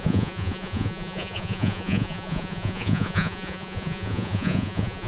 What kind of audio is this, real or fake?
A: fake